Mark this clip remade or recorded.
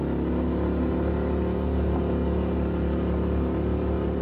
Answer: recorded